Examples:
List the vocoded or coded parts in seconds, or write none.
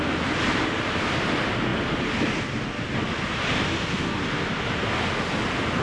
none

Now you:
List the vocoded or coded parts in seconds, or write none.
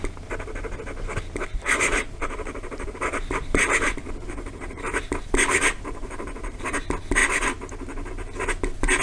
1.5-6.8 (vocoder, BigVGAN v2)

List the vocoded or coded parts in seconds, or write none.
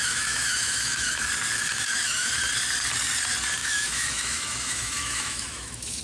0.0-1.2 (autoencoder, DAC-VAE); 1.7-2.3; 3.6-6.0